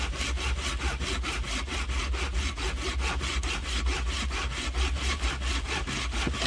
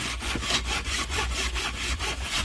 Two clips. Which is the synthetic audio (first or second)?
second